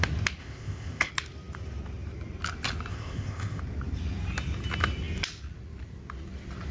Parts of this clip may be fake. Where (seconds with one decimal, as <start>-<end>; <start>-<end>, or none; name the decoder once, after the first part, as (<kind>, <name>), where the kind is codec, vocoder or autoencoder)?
0.4-1.1 (codec, ZipCodec); 2.9-3.6